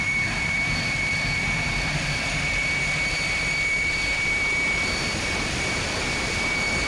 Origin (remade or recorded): remade